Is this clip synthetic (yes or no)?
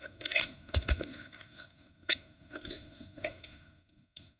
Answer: yes